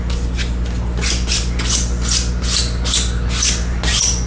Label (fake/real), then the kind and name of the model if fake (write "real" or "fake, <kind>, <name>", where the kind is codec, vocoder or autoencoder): real